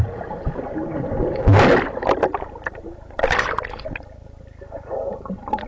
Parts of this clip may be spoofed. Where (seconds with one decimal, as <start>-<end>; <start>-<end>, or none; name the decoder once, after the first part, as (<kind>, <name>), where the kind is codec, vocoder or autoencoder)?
0.0-1.5 (vocoder, BigVGAN v2); 4.4-5.7